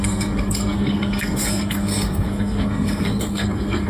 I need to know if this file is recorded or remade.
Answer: remade